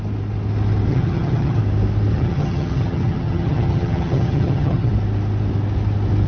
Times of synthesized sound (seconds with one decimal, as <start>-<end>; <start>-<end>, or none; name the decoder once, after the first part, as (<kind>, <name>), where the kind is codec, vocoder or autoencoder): 0.9-1.6 (vocoder, HiFi-GAN); 2.1-4.9